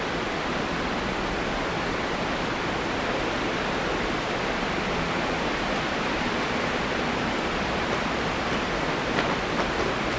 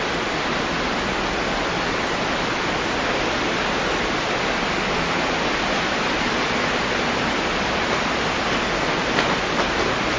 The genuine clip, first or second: second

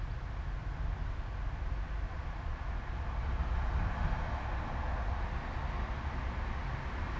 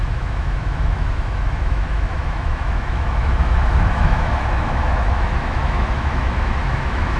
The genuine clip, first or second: first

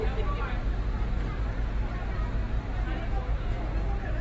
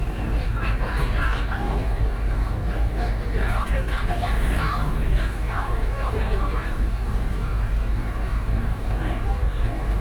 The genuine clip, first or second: first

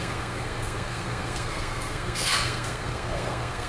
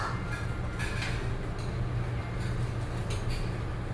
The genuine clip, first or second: second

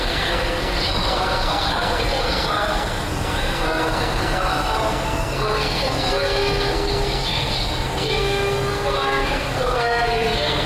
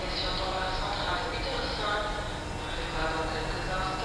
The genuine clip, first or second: second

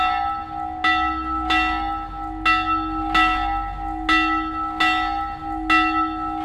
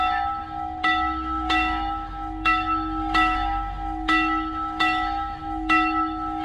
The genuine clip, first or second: first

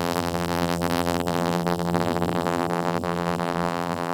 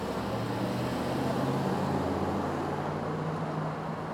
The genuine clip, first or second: second